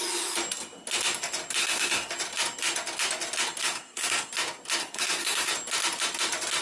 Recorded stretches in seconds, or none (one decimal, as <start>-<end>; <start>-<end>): 0.0-1.6; 2.1-3.6; 4.3-4.8; 5.5-6.6